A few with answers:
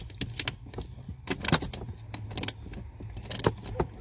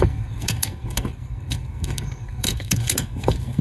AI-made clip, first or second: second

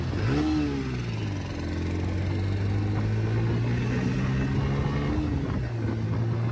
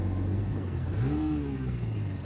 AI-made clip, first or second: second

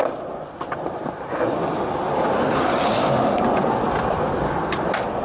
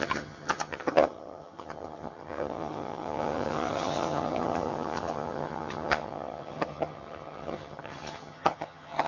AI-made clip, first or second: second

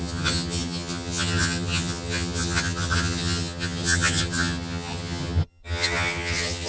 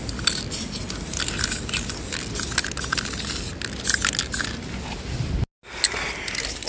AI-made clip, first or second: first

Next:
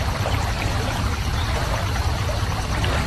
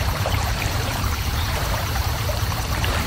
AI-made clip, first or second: second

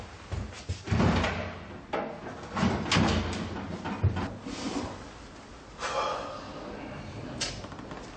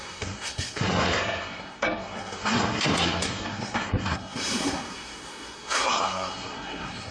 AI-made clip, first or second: second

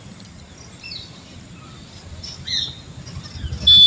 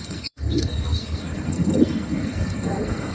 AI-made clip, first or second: second